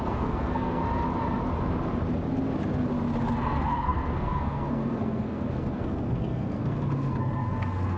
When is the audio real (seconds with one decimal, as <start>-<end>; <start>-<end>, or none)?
0.8-3.4